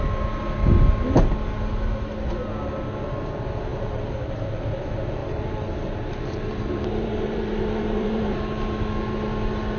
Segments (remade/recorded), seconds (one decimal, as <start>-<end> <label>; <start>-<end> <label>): 0.0-3.7 recorded; 3.7-4.3 remade; 4.3-5.2 recorded; 5.2-8.4 remade; 8.4-9.8 recorded